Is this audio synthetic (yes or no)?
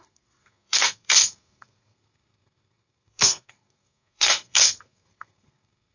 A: yes